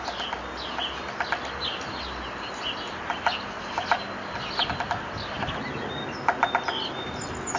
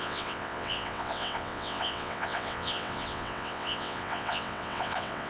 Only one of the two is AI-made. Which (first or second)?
second